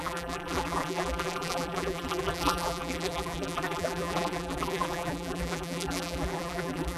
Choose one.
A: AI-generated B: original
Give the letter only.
A